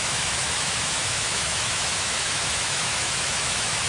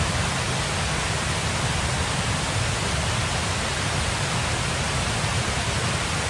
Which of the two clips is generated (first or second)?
first